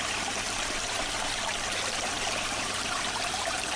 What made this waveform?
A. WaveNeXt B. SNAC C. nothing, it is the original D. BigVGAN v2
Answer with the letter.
D